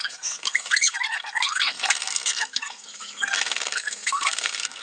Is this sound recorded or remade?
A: remade